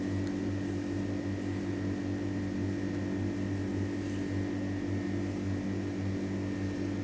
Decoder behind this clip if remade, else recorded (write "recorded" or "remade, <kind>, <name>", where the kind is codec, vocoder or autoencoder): recorded